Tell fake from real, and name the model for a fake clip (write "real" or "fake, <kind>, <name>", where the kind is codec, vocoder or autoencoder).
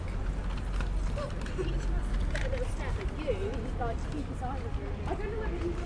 real